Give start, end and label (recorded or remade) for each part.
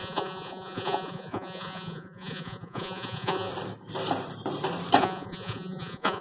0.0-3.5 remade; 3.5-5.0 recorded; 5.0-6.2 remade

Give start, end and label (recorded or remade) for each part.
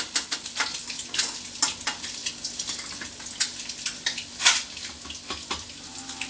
0.0-6.3 recorded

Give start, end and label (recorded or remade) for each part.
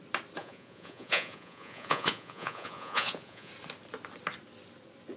0.0-0.4 recorded; 0.4-3.5 remade; 3.5-5.2 recorded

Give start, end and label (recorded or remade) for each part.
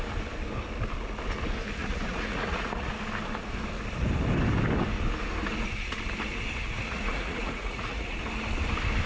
0.0-1.8 recorded; 1.8-2.9 remade; 2.9-6.6 recorded; 6.6-8.2 remade; 8.2-9.1 recorded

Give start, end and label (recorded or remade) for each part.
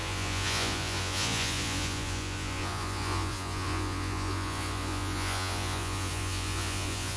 0.0-7.2 remade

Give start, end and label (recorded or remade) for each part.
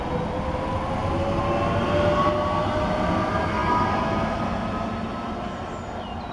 0.0-6.3 recorded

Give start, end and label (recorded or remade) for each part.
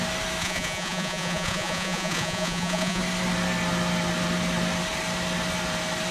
0.0-0.4 recorded; 0.4-3.0 remade; 3.0-6.1 recorded